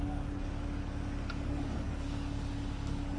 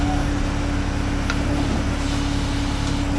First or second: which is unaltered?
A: second